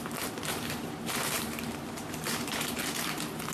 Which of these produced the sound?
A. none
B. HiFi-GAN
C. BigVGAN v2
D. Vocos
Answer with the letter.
C